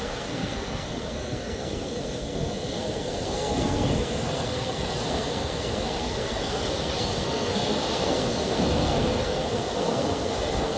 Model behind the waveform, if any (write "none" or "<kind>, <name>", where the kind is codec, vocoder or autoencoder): codec, SNAC